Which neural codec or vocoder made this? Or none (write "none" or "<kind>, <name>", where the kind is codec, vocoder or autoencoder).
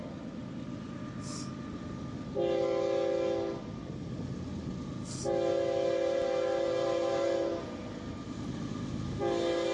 none